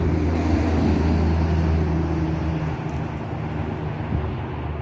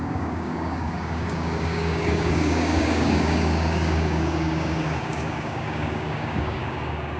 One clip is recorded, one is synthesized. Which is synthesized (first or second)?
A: second